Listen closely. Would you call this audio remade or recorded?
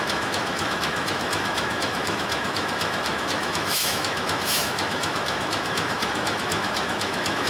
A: remade